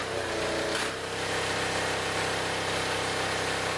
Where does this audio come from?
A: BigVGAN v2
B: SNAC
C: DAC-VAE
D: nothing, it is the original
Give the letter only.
A